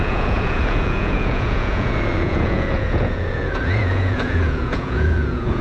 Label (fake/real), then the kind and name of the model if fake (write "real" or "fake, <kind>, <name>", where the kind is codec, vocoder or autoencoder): fake, vocoder, Vocos